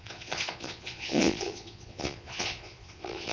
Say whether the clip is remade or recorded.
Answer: remade